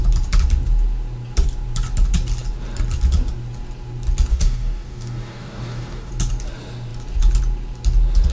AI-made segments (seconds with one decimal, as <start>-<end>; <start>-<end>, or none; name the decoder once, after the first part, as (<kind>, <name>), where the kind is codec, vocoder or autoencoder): 4.3-6.1 (codec, DAC)